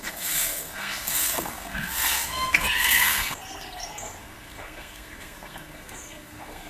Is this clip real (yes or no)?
no